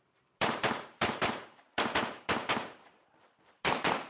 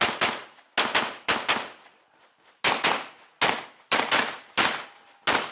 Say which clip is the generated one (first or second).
first